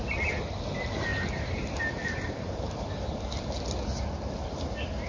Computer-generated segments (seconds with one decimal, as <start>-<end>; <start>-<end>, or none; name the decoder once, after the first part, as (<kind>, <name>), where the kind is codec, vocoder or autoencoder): 1.1-3.1 (vocoder, BigVGAN v2)